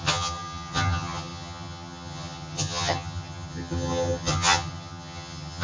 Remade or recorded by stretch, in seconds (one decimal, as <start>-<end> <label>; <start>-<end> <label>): 0.0-5.6 remade